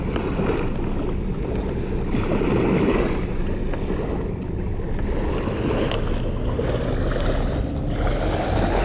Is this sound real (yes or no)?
yes